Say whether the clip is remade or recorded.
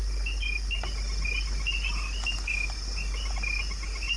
recorded